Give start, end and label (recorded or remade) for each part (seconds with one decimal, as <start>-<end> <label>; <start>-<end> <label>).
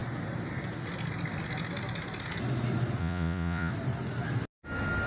0.0-3.0 recorded; 3.0-3.7 remade; 3.7-5.1 recorded